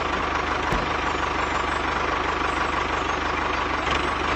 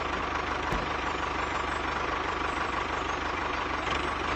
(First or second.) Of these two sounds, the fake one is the second